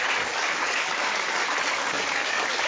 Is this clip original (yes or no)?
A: no